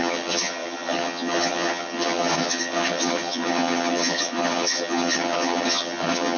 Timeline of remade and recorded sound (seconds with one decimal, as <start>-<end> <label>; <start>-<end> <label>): 0.0-6.4 remade